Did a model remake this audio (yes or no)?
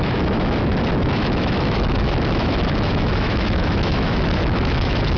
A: yes